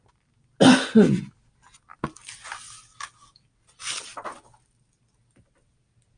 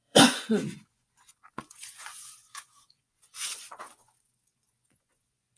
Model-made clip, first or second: second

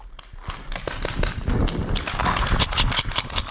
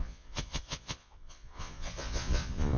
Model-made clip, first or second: second